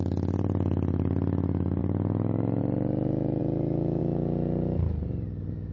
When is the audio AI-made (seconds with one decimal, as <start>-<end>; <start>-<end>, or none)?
none